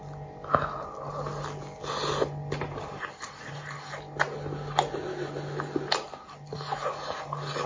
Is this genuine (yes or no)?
yes